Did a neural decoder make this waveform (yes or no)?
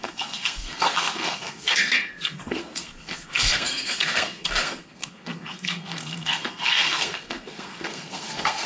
yes